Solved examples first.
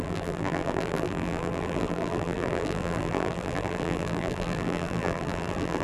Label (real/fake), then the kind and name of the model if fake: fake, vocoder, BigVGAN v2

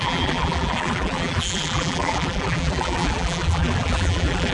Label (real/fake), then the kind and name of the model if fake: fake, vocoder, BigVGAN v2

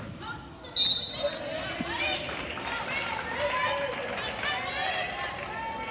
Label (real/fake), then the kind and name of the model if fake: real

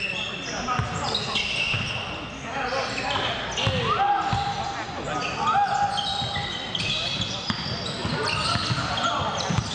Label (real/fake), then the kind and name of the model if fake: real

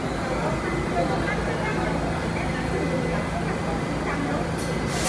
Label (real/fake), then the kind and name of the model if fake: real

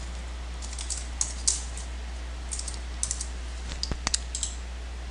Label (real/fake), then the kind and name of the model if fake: real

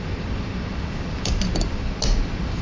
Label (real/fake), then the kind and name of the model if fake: fake, vocoder, BigVGAN v2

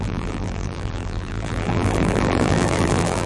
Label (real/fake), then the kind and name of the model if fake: fake, vocoder, BigVGAN v2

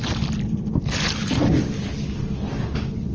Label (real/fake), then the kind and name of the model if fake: real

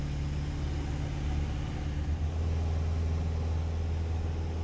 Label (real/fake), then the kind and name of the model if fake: real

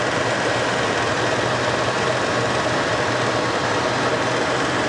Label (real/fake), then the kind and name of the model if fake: real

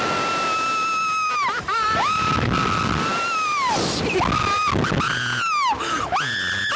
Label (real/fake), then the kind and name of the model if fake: real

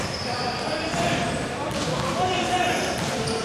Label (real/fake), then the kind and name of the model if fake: fake, vocoder, BigVGAN v2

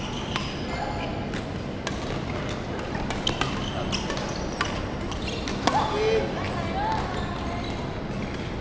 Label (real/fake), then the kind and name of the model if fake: real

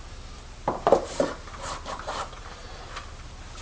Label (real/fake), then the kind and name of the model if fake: fake, vocoder, BigVGAN v2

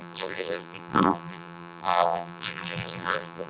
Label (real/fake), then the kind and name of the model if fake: fake, vocoder, BigVGAN v2